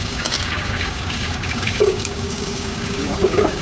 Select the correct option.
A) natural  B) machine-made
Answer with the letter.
B